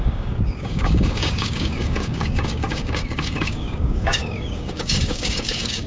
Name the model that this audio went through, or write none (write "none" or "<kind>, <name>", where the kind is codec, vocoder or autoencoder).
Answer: codec, DAC